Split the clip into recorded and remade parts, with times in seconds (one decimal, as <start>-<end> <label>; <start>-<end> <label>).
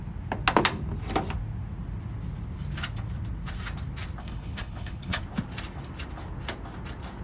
0.0-4.2 recorded; 4.2-5.2 remade; 5.2-7.2 recorded